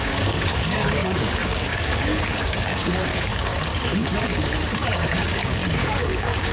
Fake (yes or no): yes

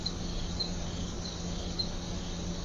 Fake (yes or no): yes